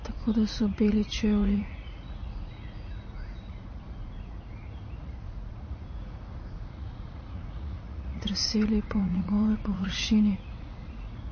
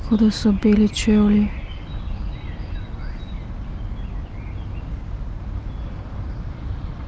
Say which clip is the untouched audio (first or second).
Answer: second